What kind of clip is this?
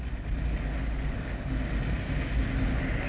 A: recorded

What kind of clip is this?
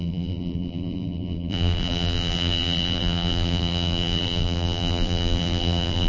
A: remade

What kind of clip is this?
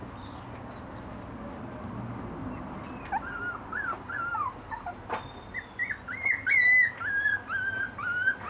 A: recorded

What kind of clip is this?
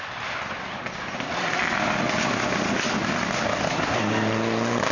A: recorded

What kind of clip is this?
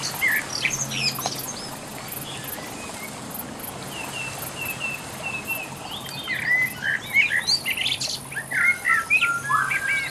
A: recorded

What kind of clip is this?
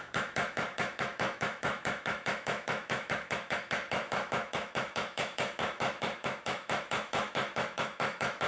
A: remade